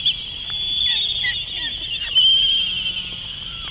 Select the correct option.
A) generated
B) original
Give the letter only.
B